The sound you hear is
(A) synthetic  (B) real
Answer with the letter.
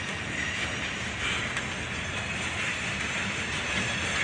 B